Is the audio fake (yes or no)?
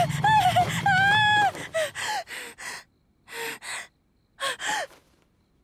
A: no